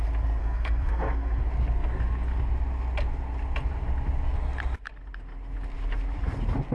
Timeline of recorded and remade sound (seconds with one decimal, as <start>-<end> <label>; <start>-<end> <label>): 0.0-0.4 recorded; 0.4-1.4 remade; 1.4-6.7 recorded